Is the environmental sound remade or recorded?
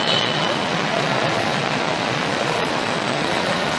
remade